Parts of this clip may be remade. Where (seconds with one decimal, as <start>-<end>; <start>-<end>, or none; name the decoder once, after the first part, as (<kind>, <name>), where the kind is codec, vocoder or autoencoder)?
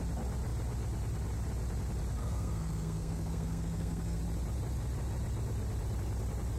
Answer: 2.2-4.2 (codec, SNAC)